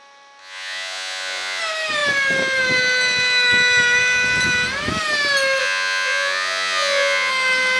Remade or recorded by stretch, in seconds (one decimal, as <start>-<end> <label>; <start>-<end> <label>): 0.0-0.4 recorded; 0.4-1.6 remade; 1.6-5.6 recorded; 5.6-7.3 remade; 7.3-7.8 recorded